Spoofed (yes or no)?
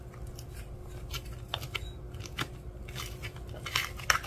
no